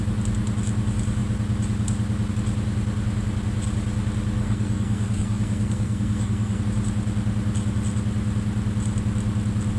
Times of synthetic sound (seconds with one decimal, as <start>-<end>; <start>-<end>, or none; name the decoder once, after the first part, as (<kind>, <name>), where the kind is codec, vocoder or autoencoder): 4.4-6.6 (codec, SNAC)